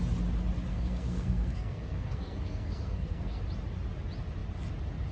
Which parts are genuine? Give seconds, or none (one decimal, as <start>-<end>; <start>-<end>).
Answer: 0.0-0.7; 3.4-5.1